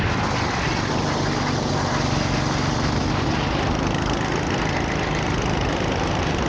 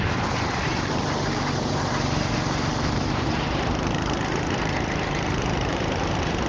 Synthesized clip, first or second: second